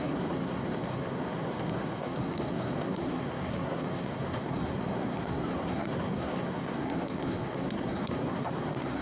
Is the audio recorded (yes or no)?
no